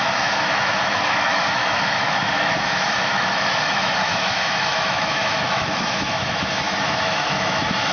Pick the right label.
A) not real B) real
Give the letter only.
A